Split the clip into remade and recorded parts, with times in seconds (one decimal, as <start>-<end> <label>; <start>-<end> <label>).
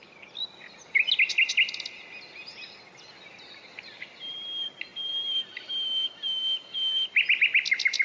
0.0-8.0 recorded